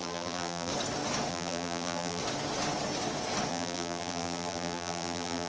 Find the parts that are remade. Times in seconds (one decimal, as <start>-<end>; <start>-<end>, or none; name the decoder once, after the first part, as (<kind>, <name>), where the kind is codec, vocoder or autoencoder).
0.0-0.7 (vocoder, BigVGAN v2); 1.3-2.2; 3.5-5.5